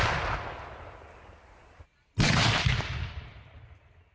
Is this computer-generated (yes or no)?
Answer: no